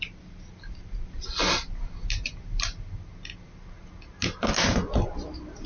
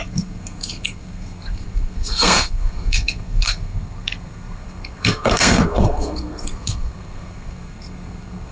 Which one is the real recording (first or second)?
first